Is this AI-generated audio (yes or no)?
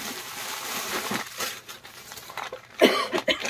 yes